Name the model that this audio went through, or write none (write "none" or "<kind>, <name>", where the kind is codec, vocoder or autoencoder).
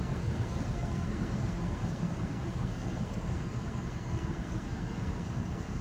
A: codec, SNAC